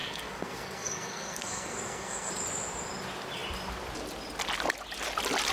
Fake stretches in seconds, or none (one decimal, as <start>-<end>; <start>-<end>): 0.0-2.3